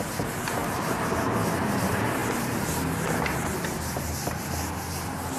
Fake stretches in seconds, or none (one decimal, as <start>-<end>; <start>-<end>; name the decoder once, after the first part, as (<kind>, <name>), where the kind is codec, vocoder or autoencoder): none